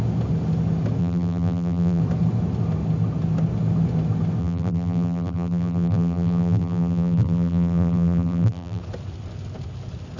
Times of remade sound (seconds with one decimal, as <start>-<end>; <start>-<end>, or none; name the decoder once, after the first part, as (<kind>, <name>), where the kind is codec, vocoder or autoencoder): 1.0-2.0 (vocoder, BigVGAN v2); 4.4-8.8